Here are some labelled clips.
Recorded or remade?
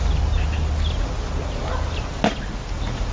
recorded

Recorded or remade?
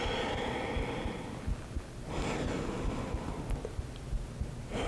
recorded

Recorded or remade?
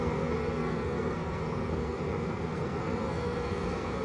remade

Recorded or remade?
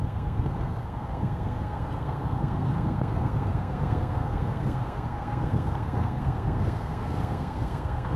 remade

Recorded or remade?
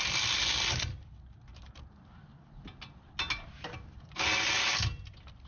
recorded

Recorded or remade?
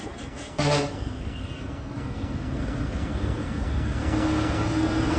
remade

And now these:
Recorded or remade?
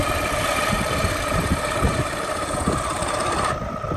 recorded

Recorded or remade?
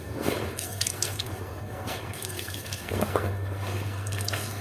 remade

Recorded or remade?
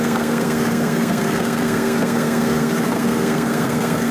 remade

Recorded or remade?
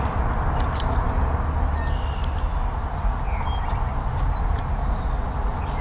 recorded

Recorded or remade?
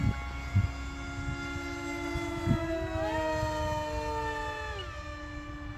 recorded